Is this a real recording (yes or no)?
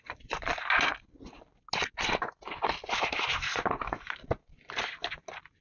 yes